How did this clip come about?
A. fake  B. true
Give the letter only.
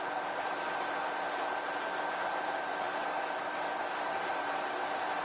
A